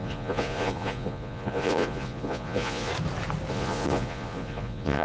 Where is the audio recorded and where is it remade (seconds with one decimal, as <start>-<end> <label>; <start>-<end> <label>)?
0.0-2.9 remade; 2.9-3.5 recorded; 3.5-5.0 remade